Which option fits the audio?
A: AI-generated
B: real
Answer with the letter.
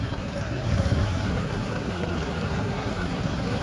A